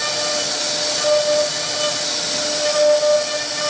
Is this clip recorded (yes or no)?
yes